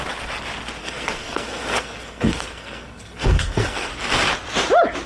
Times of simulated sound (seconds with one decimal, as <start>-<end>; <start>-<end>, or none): 0.8-3.9

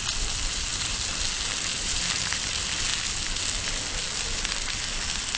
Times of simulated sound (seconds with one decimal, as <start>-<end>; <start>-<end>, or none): 0.5-1.1; 1.7-2.5

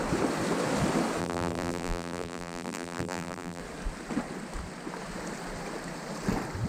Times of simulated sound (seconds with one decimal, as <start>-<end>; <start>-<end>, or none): 1.2-3.6

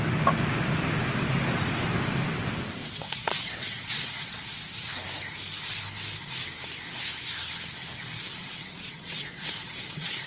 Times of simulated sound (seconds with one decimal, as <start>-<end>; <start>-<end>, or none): 2.8-4.9; 8.4-10.3

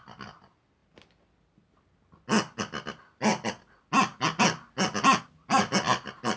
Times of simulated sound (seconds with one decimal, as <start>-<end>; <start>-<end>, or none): none